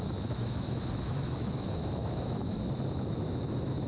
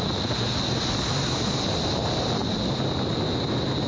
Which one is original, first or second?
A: second